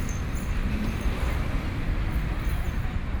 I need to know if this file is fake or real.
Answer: fake